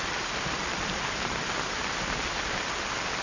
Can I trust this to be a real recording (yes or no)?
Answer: yes